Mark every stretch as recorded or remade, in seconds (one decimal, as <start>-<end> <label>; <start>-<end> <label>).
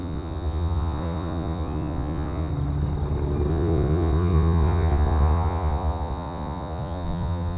0.0-2.5 remade; 2.5-3.5 recorded; 3.5-7.6 remade